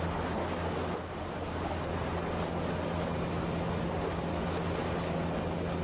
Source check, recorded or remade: recorded